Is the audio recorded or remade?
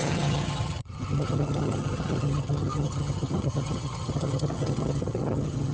remade